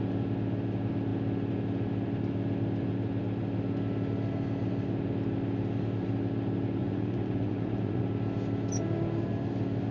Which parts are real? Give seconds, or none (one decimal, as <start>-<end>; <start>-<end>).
0.0-6.8; 8.0-9.9